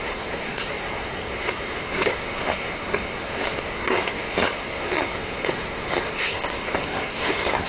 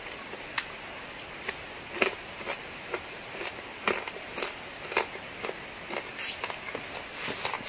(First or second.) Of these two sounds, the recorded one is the second